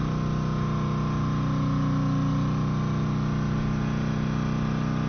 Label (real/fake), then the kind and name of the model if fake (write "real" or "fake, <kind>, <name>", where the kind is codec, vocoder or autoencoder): real